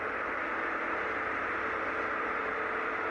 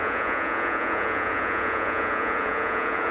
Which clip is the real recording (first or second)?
first